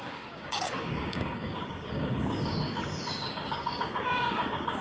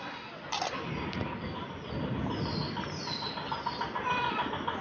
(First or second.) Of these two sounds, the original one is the second